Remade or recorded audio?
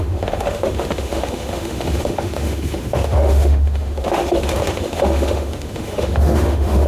remade